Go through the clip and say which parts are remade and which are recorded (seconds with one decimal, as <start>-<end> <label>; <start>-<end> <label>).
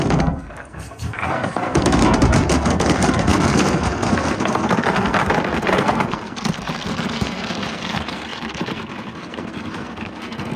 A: 0.0-10.6 remade